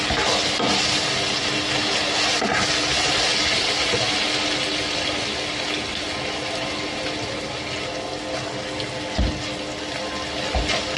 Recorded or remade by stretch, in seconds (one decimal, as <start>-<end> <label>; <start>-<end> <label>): 0.0-11.0 recorded